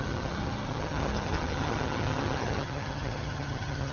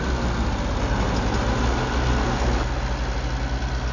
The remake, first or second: first